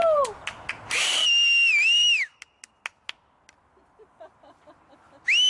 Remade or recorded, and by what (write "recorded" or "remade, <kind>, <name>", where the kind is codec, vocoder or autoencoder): recorded